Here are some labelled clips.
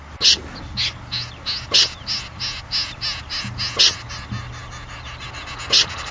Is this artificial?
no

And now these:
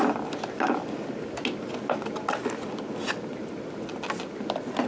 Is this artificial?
no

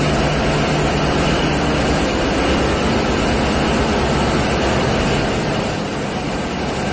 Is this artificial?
no